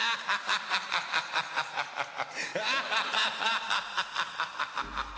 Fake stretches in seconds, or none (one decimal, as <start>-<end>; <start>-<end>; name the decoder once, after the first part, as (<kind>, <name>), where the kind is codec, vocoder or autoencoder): none